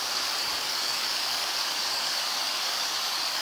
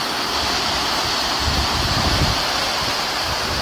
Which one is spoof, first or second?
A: first